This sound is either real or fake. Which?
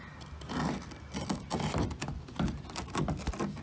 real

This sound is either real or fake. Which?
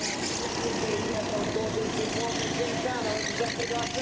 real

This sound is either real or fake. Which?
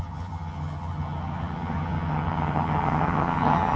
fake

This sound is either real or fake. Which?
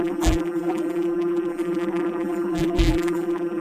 fake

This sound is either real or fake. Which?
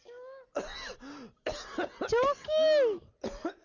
real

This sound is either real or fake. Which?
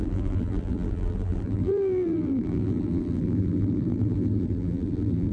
fake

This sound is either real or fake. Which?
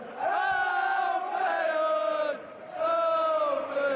real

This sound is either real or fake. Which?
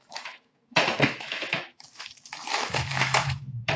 fake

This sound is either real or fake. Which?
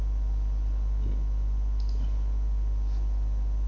real